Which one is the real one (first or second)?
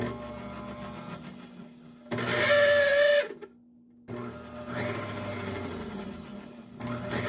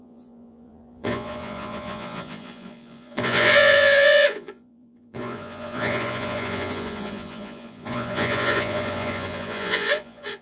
first